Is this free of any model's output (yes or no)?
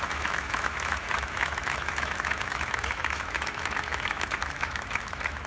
no